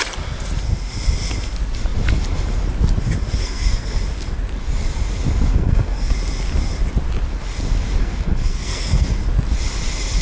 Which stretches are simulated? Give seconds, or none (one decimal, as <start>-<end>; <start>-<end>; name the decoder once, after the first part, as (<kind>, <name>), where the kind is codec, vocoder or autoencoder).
3.4-4.0 (codec, SNAC); 5.5-6.1; 8.0-9.2